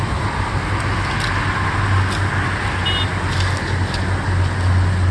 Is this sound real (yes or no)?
yes